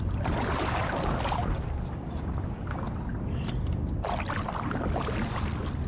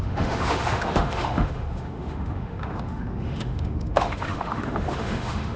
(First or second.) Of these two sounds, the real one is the first